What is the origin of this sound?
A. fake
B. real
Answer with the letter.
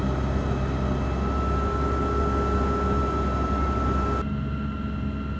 B